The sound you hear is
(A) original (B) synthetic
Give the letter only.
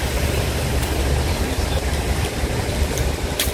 B